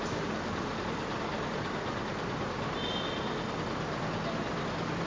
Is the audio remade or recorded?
recorded